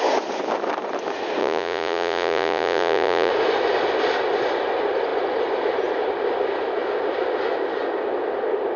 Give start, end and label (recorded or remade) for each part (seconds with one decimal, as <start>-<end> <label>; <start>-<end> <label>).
0.0-1.4 recorded; 1.4-3.3 remade; 3.3-8.8 recorded